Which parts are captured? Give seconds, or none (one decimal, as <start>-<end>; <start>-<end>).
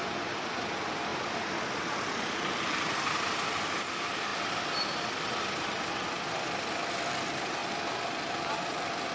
0.0-9.1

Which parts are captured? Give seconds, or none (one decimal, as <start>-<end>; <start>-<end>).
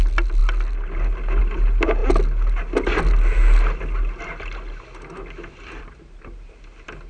0.0-7.1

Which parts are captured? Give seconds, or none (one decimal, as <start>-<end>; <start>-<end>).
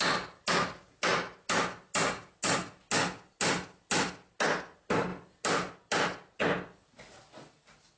0.0-8.0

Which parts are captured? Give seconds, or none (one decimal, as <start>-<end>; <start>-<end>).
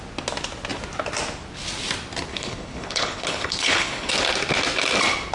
0.0-2.3; 4.1-5.3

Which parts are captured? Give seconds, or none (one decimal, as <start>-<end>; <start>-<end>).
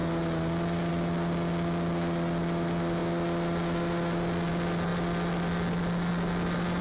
0.0-6.8